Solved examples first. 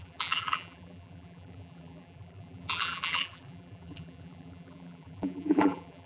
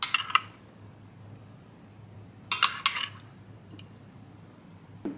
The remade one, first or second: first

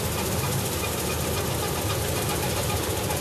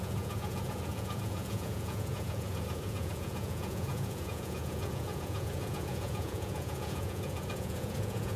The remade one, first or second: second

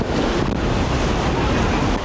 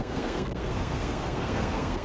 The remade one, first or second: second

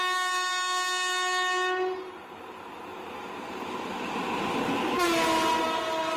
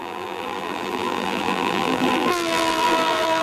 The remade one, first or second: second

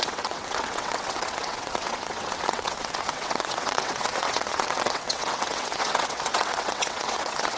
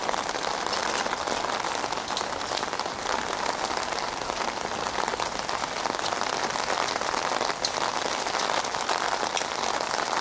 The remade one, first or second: first